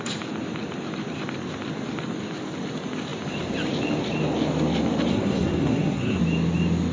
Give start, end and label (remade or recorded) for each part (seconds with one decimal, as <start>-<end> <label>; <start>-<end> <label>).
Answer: 0.0-5.1 recorded; 5.1-6.2 remade; 6.2-6.9 recorded